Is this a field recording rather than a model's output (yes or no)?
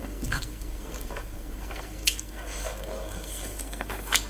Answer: no